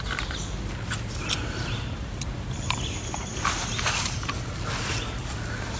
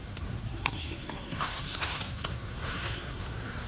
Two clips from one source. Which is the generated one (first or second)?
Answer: second